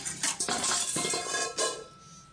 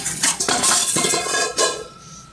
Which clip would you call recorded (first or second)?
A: first